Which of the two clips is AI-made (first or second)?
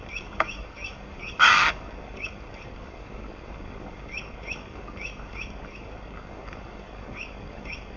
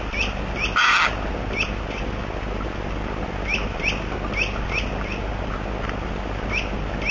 first